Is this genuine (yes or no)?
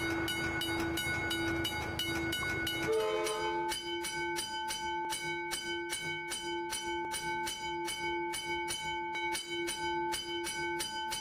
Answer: yes